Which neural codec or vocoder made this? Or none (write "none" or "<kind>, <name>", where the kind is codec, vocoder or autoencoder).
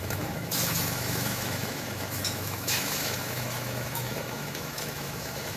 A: autoencoder, DAC-VAE